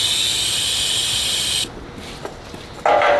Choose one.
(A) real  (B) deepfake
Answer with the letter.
A